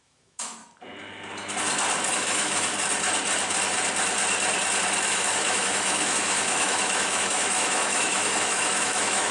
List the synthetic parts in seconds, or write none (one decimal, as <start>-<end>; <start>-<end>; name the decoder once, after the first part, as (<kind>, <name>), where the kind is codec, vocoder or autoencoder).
0.0-0.6 (autoencoder, DAC-VAE); 2.1-2.7; 5.0-9.3